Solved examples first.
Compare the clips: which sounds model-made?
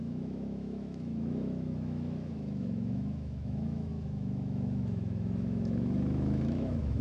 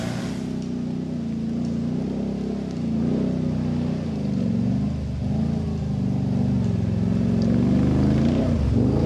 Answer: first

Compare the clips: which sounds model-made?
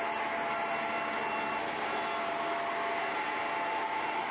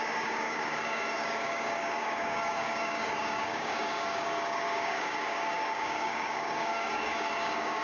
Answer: second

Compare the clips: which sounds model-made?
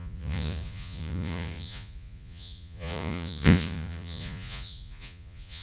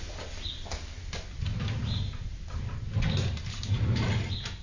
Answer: first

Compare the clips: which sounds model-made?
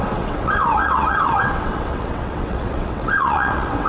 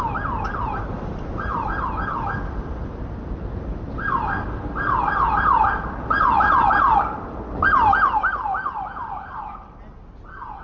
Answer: first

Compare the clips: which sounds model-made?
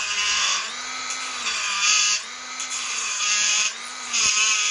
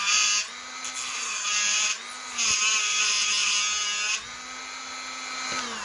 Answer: first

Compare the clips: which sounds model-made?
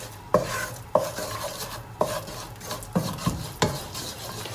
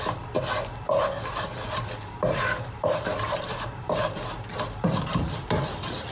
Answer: second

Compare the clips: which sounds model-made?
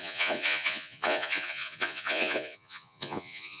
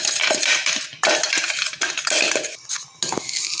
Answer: first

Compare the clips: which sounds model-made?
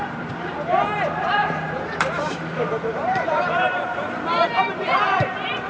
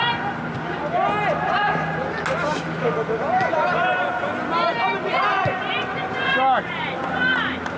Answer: first